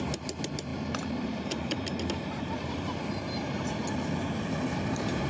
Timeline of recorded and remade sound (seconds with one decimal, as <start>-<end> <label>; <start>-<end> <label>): 0.0-5.3 remade